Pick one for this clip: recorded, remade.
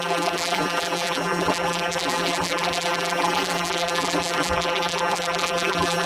remade